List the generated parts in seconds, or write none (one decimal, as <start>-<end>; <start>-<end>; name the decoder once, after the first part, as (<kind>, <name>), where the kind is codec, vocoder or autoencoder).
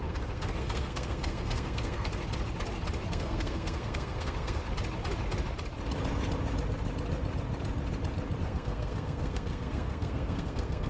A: 0.0-2.1 (codec, SNAC); 3.1-4.6; 8.4-10.9